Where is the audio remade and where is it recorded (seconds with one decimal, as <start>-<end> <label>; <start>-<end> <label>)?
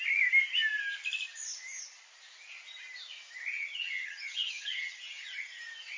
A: 0.0-3.5 recorded; 3.5-5.6 remade; 5.6-6.0 recorded